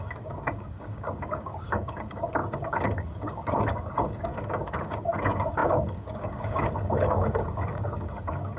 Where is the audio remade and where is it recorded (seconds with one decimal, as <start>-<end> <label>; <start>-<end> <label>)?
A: 0.0-8.6 remade